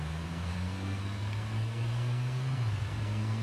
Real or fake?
fake